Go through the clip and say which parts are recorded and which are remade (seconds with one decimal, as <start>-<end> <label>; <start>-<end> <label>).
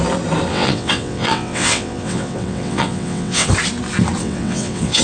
0.0-0.5 recorded; 0.5-3.5 remade; 3.5-4.2 recorded; 4.2-5.0 remade